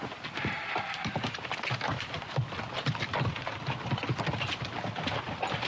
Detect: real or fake real